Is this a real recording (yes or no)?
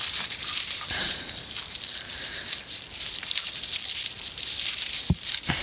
no